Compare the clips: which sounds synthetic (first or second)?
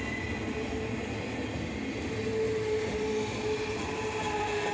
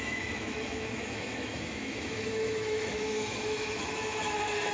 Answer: second